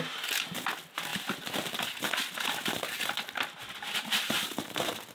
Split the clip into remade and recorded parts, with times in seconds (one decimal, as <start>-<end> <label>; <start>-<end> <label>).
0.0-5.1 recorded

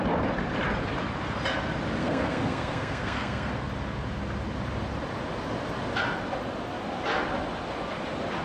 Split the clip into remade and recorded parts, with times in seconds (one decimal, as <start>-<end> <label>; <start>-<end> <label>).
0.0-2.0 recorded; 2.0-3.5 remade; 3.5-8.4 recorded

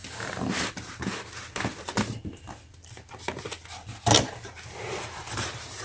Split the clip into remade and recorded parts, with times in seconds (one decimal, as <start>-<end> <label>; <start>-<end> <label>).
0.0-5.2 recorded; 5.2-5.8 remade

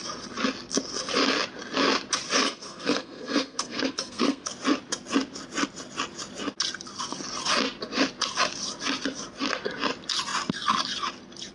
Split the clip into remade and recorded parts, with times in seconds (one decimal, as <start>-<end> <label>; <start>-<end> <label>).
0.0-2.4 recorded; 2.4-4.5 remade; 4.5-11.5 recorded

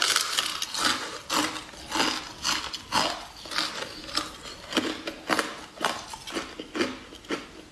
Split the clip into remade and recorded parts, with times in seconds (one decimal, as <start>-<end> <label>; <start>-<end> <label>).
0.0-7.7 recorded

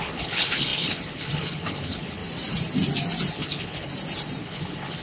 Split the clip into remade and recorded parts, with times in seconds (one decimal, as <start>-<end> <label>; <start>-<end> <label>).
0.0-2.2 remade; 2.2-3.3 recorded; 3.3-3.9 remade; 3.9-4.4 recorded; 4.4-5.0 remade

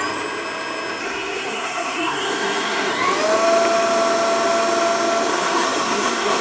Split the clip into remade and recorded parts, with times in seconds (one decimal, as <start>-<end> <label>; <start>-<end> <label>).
0.0-1.0 recorded; 1.0-2.9 remade; 2.9-5.3 recorded; 5.3-6.4 remade

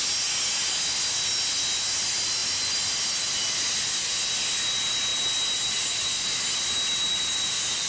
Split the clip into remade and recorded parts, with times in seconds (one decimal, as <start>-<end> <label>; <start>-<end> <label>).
0.0-7.9 recorded